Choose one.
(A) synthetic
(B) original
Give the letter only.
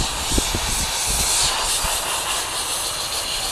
B